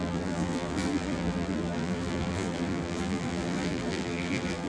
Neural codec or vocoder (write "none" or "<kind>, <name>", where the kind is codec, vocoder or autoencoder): vocoder, BigVGAN v2